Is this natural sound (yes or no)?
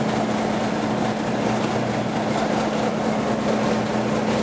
yes